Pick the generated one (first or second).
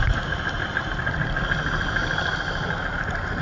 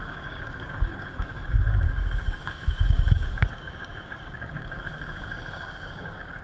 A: second